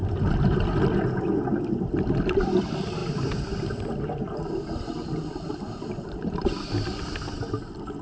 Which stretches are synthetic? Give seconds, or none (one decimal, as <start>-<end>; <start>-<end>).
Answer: none